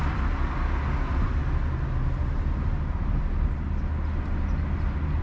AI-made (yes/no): no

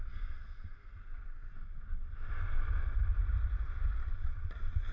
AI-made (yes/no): no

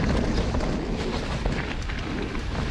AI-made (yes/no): no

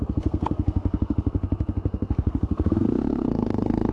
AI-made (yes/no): yes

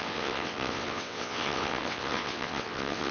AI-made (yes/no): yes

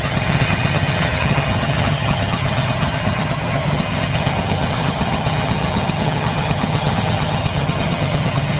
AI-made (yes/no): yes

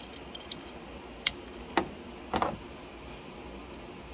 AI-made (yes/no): no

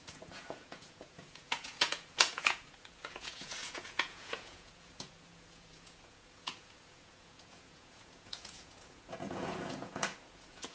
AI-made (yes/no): yes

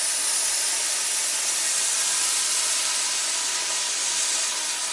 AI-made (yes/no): no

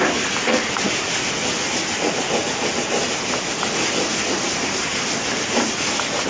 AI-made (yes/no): no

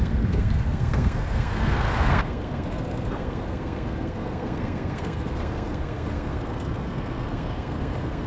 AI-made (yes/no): yes